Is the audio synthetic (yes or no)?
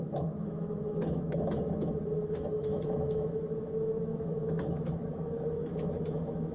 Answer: yes